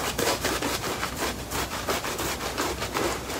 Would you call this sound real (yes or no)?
no